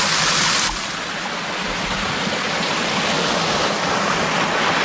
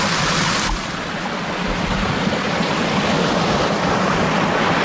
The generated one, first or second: second